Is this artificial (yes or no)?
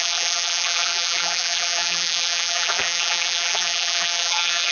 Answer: yes